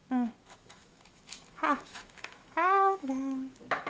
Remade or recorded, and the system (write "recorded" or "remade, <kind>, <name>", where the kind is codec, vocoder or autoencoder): remade, autoencoder, DAC-VAE